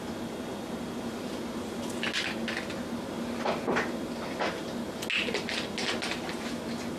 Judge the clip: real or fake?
real